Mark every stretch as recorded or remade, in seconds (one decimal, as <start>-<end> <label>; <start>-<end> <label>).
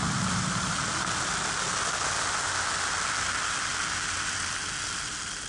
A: 0.0-5.5 recorded